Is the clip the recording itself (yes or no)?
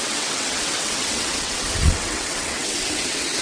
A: no